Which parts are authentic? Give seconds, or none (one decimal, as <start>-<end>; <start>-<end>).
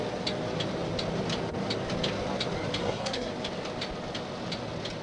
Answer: 0.0-2.8; 3.3-5.0